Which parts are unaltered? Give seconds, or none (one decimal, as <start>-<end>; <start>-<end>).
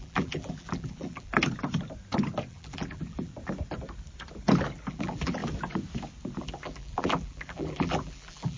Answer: 1.3-2.5; 3.3-4.9; 5.4-6.4